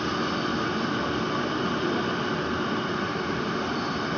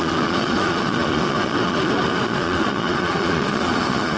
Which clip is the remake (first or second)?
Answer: second